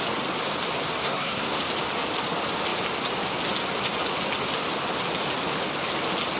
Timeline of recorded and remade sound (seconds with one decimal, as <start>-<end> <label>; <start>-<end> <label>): 0.0-1.0 recorded; 1.0-1.6 remade; 1.6-6.4 recorded